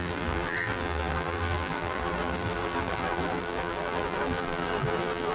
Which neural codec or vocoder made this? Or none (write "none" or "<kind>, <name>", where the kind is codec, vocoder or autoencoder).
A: vocoder, BigVGAN v2